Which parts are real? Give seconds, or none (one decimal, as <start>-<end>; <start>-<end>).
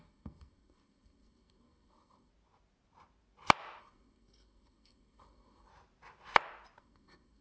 2.3-3.8; 5.7-6.8